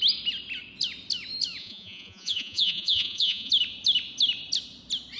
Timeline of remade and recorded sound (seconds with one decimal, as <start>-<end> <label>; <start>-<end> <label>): 0.0-1.6 recorded; 1.6-3.5 remade; 3.5-5.2 recorded